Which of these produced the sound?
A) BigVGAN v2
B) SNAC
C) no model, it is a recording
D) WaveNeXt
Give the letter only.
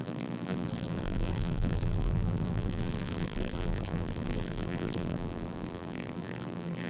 A